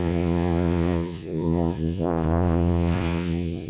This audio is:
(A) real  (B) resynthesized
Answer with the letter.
B